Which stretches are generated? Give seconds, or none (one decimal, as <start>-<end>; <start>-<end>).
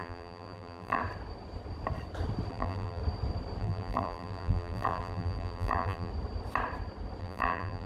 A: 0.0-1.0; 2.5-3.0; 3.6-6.1; 7.2-7.9